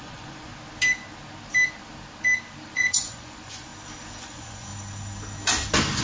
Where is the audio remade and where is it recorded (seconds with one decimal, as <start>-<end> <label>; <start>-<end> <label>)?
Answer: 0.0-0.5 remade; 0.5-2.7 recorded; 2.7-3.7 remade; 3.7-4.2 recorded; 4.2-4.7 remade; 4.7-6.0 recorded